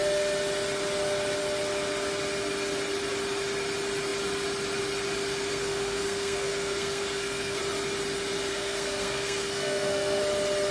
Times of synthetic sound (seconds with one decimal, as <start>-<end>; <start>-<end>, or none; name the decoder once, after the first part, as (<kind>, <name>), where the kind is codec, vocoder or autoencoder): 5.5-7.6 (codec, SNAC); 8.5-10.2

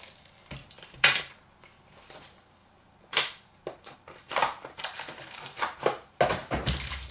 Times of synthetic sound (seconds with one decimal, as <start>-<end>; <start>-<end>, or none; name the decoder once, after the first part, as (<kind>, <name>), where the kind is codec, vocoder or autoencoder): 0.6-1.3 (vocoder, BigVGAN v2); 2.6-5.8; 6.4-7.1

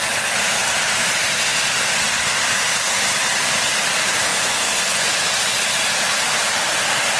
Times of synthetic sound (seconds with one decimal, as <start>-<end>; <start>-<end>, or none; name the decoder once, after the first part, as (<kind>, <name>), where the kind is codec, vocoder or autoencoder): 4.3-5.1 (vocoder, Vocos)

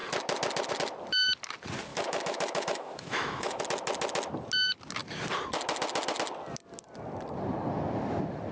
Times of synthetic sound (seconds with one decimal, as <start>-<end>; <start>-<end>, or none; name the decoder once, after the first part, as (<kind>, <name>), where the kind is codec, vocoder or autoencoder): 1.9-3.6 (autoencoder, DAC-VAE)